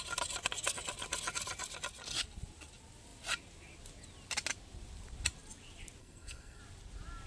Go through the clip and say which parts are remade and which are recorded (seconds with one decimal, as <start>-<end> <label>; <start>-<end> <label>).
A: 0.0-6.0 recorded; 6.0-6.6 remade; 6.6-7.3 recorded